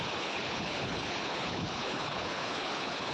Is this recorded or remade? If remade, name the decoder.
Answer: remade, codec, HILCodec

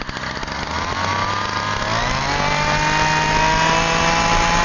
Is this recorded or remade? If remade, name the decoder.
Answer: recorded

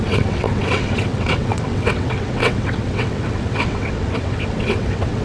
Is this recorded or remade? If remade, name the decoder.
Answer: remade, vocoder, WaveNeXt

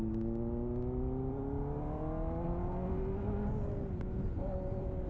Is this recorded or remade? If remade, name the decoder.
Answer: recorded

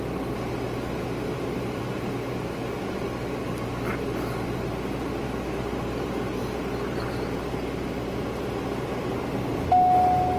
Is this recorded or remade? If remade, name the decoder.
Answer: recorded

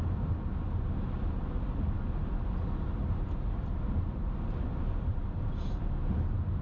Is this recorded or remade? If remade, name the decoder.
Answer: recorded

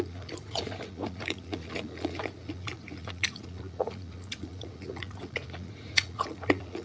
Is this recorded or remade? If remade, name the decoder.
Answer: remade, vocoder, Vocos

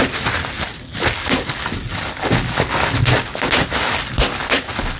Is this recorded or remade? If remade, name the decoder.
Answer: recorded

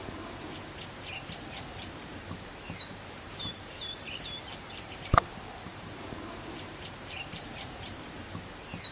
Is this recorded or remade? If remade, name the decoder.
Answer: remade, vocoder, BigVGAN v2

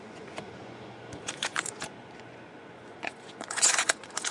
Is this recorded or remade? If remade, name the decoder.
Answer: remade, vocoder, Vocos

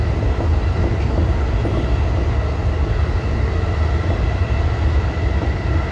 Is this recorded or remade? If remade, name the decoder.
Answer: recorded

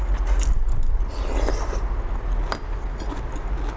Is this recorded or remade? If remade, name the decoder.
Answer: recorded